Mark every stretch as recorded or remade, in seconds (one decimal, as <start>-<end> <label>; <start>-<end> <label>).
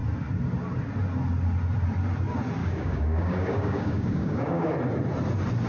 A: 0.0-2.6 recorded; 2.6-4.7 remade; 4.7-5.7 recorded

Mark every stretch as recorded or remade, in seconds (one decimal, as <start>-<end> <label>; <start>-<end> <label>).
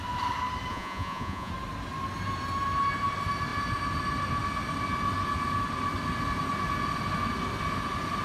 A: 0.0-0.7 recorded; 0.7-1.5 remade; 1.5-8.2 recorded